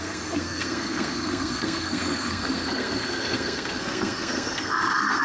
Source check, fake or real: fake